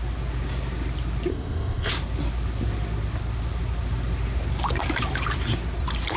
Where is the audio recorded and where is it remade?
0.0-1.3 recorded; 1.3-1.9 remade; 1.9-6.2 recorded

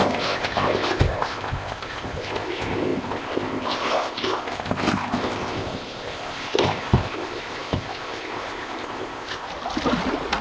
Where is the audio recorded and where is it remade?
0.0-9.5 remade; 9.5-10.4 recorded

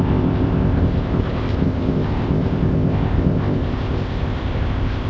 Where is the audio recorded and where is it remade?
0.0-5.1 remade

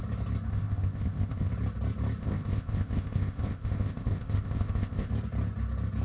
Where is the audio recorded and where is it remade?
0.0-0.5 recorded; 0.5-1.5 remade; 1.5-2.2 recorded; 2.2-5.1 remade; 5.1-6.0 recorded

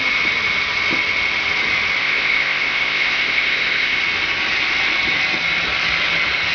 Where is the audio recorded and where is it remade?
0.0-2.0 recorded; 2.0-4.0 remade; 4.0-6.5 recorded

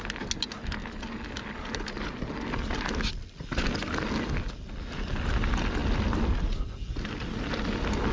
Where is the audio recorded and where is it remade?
0.0-8.1 recorded

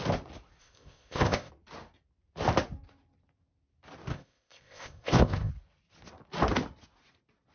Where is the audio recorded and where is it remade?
0.0-0.6 recorded; 0.6-1.5 remade; 1.5-4.1 recorded; 4.1-5.5 remade; 5.5-7.5 recorded